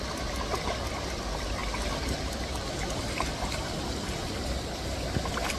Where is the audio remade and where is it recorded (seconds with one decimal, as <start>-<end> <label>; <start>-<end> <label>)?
0.0-5.6 recorded